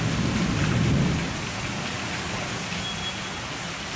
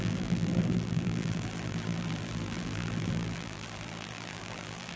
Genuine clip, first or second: first